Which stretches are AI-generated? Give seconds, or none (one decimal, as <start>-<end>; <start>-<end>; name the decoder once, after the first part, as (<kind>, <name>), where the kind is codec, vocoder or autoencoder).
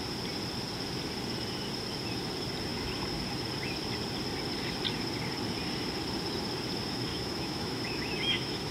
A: 7.1-8.7 (autoencoder, DAC-VAE)